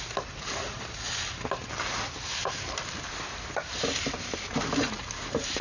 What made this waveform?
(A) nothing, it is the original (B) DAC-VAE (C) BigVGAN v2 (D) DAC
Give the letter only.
A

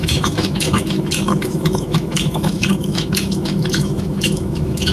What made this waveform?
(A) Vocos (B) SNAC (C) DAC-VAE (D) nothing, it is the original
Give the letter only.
C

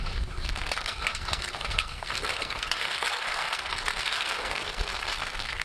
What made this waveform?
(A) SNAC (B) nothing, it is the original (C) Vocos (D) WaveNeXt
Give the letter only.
A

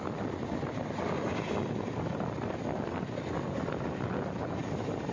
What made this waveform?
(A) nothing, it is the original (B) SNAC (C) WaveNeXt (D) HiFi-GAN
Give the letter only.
A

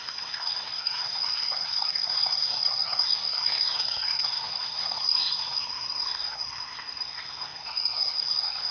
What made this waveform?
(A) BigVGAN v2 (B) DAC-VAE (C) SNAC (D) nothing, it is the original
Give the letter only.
C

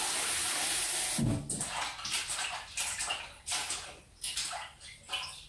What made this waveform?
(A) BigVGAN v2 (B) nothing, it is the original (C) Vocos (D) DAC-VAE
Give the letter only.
B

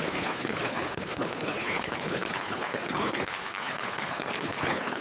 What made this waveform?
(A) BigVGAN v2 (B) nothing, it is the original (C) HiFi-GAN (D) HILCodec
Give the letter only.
D